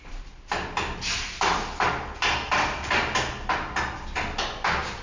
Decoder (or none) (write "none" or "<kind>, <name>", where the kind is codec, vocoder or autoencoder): none